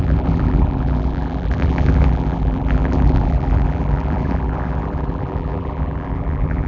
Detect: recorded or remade remade